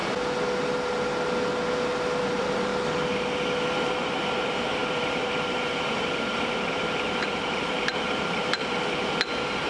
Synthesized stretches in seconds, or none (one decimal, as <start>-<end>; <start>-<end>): 2.2-2.7; 3.7-9.7

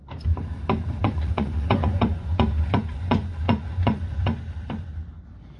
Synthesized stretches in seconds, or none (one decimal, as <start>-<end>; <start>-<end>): 1.0-4.4

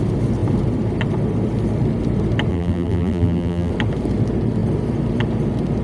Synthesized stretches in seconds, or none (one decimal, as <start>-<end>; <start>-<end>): 2.5-3.7